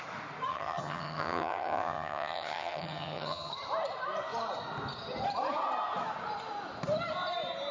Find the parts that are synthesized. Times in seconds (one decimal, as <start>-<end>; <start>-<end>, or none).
0.5-3.5